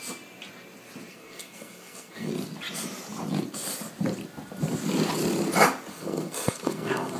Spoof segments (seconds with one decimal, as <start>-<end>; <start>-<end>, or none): 1.1-2.3; 5.9-7.2